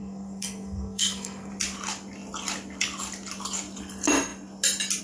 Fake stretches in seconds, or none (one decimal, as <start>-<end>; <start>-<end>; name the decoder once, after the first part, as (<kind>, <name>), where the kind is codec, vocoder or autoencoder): 0.0-1.5 (codec, SNAC)

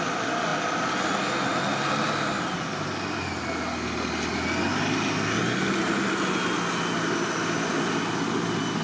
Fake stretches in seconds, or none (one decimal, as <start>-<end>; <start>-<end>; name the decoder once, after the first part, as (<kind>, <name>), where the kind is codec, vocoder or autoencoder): none

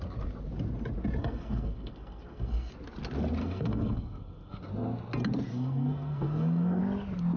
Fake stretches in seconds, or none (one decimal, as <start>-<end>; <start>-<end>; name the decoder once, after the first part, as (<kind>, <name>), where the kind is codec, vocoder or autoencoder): 1.2-2.7 (codec, SNAC); 3.4-4.6; 5.5-6.8